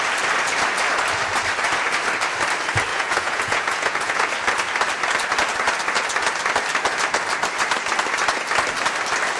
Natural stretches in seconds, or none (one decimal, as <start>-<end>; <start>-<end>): 0.0-2.9; 4.3-9.4